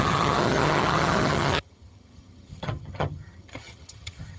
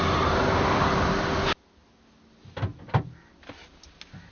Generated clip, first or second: first